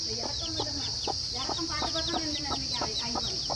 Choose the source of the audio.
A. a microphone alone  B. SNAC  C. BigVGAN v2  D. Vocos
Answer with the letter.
A